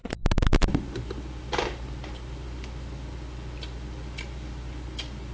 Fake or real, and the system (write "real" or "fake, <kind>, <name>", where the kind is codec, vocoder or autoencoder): real